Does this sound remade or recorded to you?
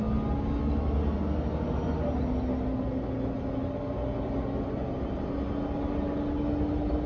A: recorded